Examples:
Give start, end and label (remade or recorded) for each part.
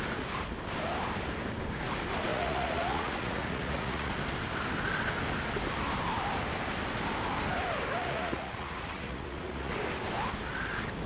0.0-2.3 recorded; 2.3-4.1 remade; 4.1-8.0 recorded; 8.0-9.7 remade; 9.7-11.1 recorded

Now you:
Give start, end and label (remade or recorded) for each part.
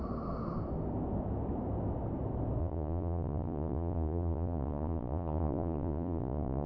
0.0-2.6 recorded; 2.6-6.7 remade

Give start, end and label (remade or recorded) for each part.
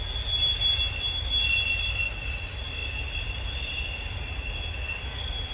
0.0-5.5 recorded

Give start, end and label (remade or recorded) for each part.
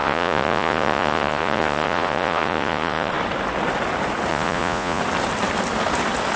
0.0-3.1 remade; 3.1-4.3 recorded; 4.3-5.0 remade; 5.0-6.4 recorded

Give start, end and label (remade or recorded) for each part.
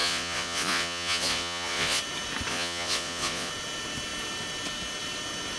0.0-2.0 remade; 2.0-2.5 recorded; 2.5-3.5 remade; 3.5-5.6 recorded